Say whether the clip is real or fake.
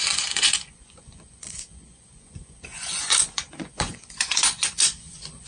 fake